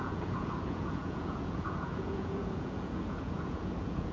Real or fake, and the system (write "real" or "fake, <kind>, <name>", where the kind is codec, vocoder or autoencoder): fake, vocoder, Vocos